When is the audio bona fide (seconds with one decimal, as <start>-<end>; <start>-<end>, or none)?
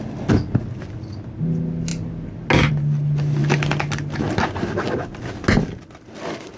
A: 0.0-6.6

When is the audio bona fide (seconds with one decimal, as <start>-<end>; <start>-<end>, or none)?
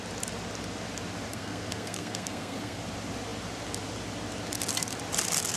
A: 0.0-1.3; 2.8-5.6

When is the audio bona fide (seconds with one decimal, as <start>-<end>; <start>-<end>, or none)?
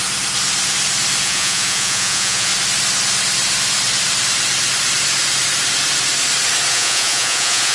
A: 0.0-1.2; 2.5-6.7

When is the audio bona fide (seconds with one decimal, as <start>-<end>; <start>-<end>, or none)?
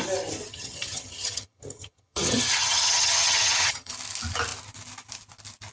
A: 0.0-0.5; 3.9-5.7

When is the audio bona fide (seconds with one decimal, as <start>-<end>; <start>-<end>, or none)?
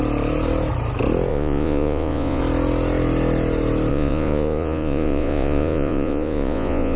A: 0.0-1.3; 2.4-3.9